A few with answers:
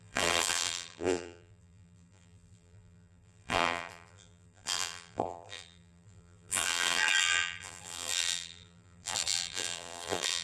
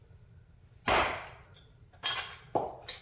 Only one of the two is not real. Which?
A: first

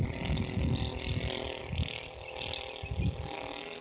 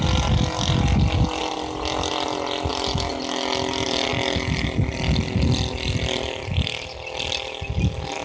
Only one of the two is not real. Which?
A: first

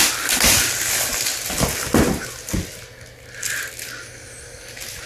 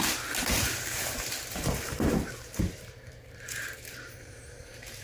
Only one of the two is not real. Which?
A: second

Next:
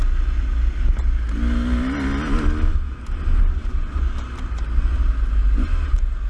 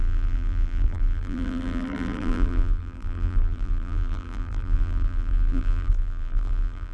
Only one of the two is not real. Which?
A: second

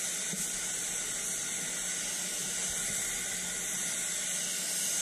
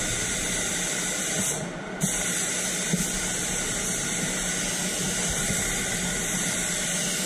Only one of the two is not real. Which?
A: second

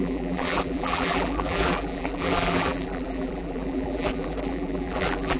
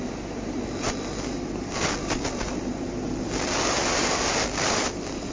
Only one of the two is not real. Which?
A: first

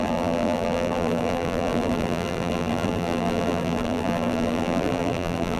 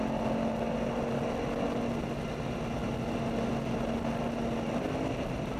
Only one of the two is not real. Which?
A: first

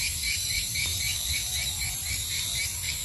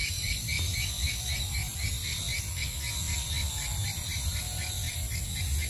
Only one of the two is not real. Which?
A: first